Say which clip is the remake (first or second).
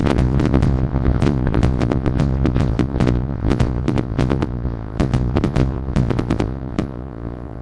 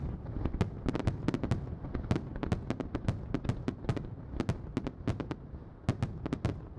first